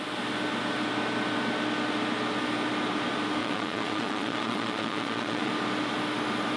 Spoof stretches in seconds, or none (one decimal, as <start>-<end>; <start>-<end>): 3.4-5.5